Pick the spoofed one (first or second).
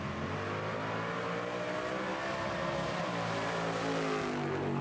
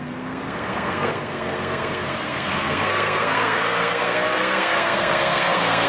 second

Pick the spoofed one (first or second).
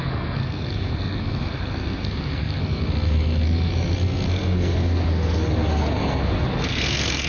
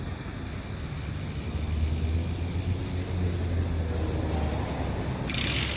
first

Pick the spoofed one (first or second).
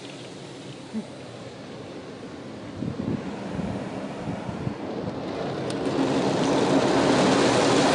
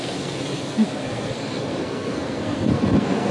second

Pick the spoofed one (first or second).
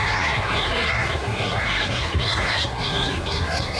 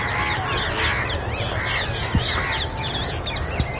first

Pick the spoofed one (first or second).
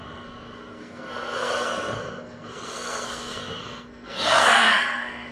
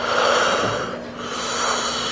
first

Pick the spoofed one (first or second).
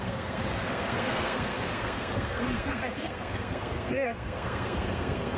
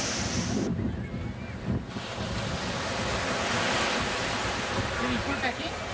first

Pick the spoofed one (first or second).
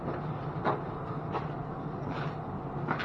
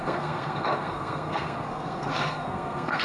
second